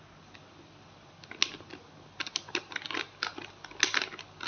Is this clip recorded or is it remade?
recorded